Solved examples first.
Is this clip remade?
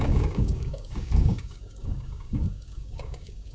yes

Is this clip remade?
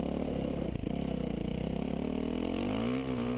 no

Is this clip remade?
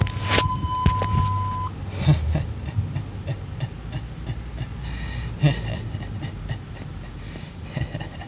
no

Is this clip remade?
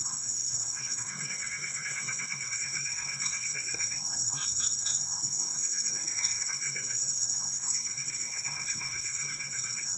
yes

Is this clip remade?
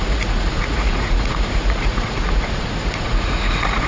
yes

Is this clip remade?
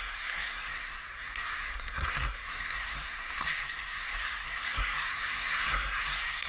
yes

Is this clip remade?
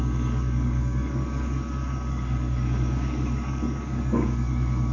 yes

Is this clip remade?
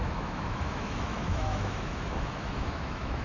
yes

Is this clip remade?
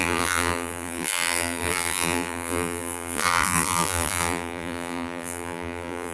yes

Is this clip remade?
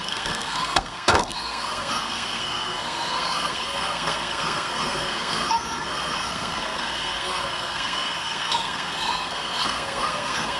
yes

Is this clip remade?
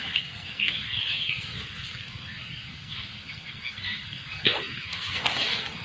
yes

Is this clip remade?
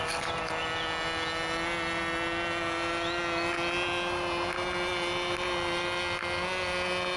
no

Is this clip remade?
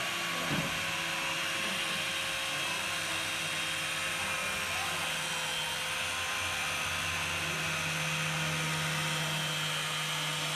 no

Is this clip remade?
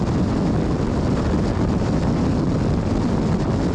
no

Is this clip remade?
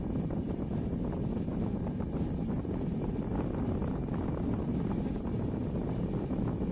no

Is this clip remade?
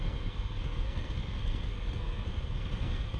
yes